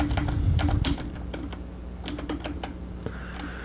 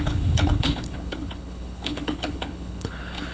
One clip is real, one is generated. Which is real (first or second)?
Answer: first